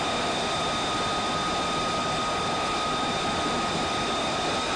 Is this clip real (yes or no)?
yes